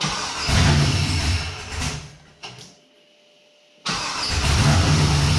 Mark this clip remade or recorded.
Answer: recorded